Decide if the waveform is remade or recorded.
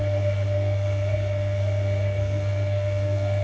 remade